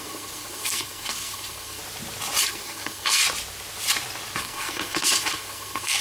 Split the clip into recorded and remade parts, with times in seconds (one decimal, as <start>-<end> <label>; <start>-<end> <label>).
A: 0.0-1.8 remade; 1.8-2.4 recorded; 2.4-3.2 remade; 3.2-4.4 recorded; 4.4-6.0 remade